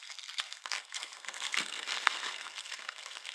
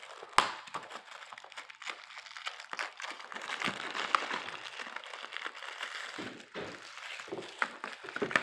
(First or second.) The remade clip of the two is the first